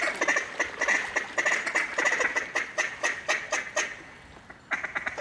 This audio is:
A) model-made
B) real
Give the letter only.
B